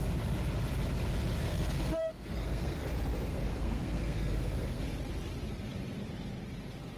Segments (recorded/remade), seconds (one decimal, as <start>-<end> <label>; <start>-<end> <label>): 0.0-1.5 recorded; 1.5-2.9 remade; 2.9-3.3 recorded; 3.3-4.8 remade; 4.8-7.0 recorded